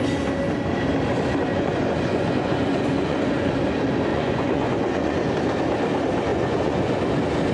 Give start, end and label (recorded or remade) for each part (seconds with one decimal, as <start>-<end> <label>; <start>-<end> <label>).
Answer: 0.0-1.5 recorded; 1.5-3.5 remade; 3.5-4.1 recorded; 4.1-5.3 remade; 5.3-6.3 recorded; 6.3-7.0 remade; 7.0-7.5 recorded